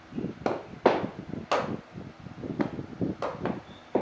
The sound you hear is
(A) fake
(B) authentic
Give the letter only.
B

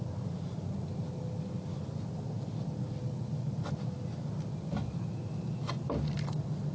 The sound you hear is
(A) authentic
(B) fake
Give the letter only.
A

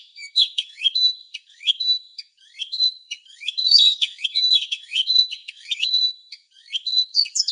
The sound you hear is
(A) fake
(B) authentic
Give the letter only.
A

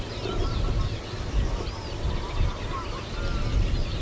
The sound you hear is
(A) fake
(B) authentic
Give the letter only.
B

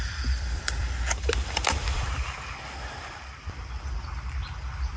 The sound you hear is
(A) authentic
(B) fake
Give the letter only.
B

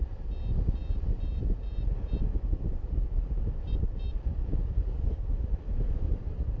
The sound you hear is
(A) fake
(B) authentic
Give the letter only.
B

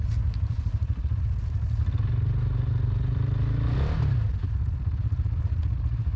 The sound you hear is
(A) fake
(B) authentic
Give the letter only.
B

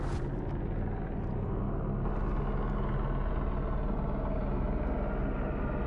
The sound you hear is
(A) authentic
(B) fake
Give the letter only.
A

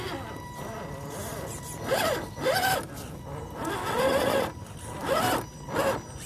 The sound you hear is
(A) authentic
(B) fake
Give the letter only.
A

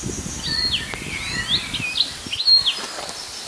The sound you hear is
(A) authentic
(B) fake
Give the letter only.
A